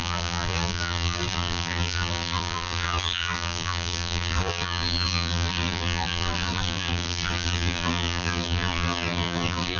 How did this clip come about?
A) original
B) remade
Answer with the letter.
B